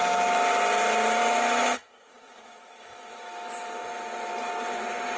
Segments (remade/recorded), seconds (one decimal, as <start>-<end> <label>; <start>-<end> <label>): 0.0-1.2 recorded; 1.2-3.9 remade; 3.9-5.2 recorded